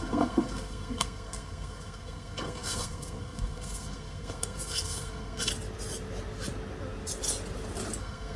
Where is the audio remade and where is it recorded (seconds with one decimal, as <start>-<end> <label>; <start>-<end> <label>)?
0.0-5.5 remade; 5.5-8.0 recorded; 8.0-8.4 remade